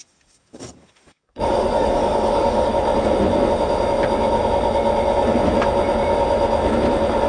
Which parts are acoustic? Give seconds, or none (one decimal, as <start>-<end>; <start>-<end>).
2.7-7.3